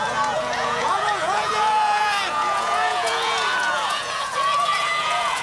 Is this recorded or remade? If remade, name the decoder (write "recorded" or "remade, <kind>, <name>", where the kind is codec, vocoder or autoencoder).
remade, vocoder, Vocos